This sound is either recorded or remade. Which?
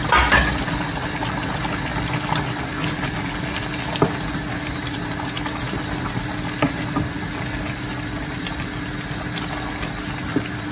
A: recorded